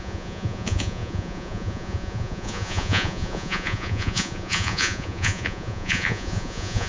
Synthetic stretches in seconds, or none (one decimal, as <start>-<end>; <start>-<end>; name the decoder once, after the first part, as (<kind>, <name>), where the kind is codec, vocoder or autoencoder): 0.0-6.9 (vocoder, Vocos)